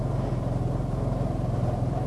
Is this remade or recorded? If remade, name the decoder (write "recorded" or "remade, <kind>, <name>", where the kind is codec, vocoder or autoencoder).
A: recorded